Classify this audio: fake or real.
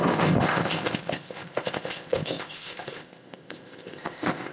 fake